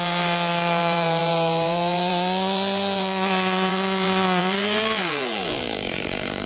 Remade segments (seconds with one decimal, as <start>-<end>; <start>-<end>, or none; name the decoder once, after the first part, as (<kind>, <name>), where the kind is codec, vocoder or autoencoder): 0.0-6.5 (vocoder, BigVGAN v2)